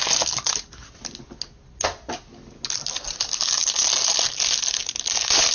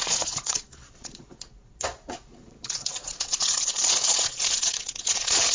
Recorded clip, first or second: first